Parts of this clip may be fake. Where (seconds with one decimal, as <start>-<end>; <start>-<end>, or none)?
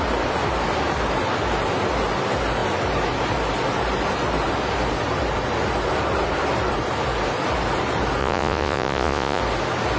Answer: 8.2-9.4